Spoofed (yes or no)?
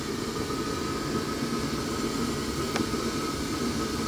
no